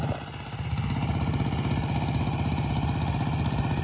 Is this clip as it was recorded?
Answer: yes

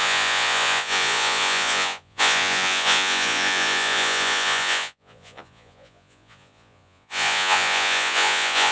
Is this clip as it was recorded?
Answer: no